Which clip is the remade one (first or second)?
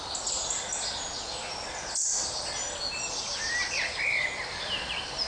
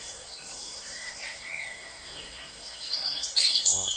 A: second